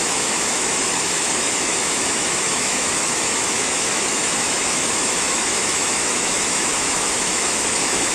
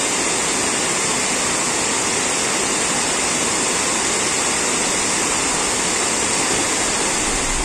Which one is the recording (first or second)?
second